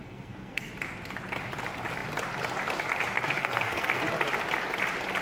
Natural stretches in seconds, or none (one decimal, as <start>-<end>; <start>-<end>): 0.7-3.4; 4.0-5.2